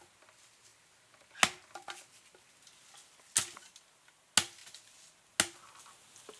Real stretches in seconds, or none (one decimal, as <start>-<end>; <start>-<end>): 0.0-6.4